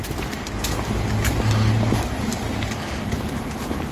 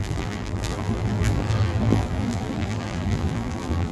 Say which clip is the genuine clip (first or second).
first